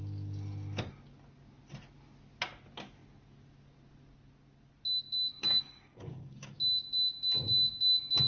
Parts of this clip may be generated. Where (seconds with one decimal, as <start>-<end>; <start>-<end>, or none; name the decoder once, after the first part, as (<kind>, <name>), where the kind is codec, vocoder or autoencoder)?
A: 5.4-6.5 (codec, DAC)